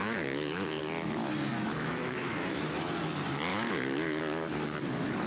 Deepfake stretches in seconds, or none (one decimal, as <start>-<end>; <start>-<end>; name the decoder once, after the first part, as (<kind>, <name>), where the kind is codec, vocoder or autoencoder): 0.0-0.8 (autoencoder, DAC-VAE); 1.5-2.9; 3.5-4.2